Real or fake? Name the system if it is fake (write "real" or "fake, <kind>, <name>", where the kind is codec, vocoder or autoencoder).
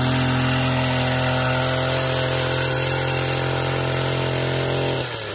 real